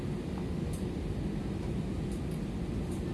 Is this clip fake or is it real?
real